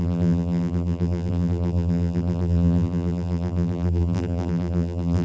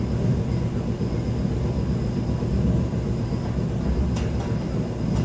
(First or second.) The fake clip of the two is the first